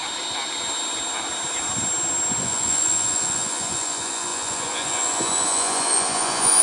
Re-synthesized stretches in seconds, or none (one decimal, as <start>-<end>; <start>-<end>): 2.4-6.6